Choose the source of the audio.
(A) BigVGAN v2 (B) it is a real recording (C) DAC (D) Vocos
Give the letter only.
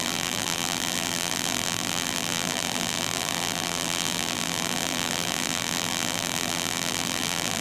A